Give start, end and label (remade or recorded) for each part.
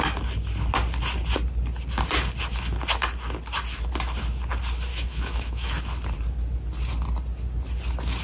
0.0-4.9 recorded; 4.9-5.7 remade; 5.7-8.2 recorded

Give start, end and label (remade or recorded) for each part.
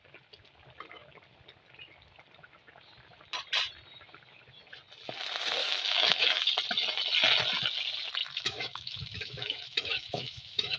0.0-5.6 recorded; 5.6-6.5 remade; 6.5-8.2 recorded; 8.2-10.8 remade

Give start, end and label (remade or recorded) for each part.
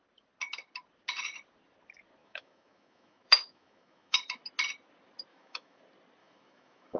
0.0-2.2 recorded; 2.2-4.4 remade; 4.4-5.3 recorded; 5.3-5.8 remade; 5.8-6.2 recorded; 6.2-7.0 remade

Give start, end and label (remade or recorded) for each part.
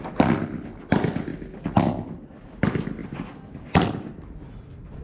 0.0-5.0 recorded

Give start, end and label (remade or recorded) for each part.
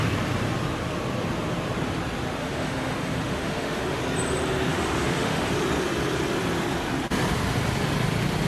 0.0-2.4 recorded; 2.4-4.0 remade; 4.0-4.7 recorded; 4.7-5.5 remade; 5.5-8.5 recorded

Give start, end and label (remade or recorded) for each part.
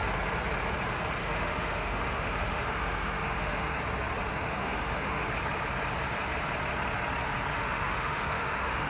0.0-1.2 recorded; 1.2-3.8 remade; 3.8-4.3 recorded; 4.3-5.3 remade; 5.3-7.5 recorded; 7.5-8.9 remade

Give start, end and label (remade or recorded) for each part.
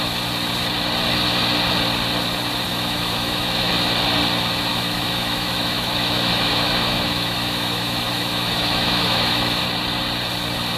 0.0-2.7 recorded; 2.7-3.7 remade; 3.7-4.7 recorded; 4.7-9.6 remade; 9.6-10.8 recorded